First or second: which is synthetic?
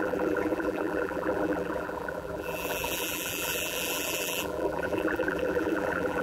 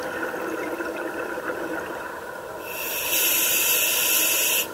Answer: first